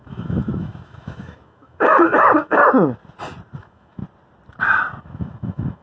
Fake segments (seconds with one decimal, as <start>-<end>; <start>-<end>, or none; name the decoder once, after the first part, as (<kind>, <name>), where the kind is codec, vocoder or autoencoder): 0.0-2.6 (autoencoder, DAC-VAE); 3.6-4.0; 5.0-5.8